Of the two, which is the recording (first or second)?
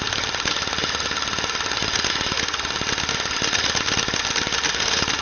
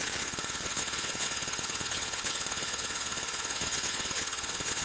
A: first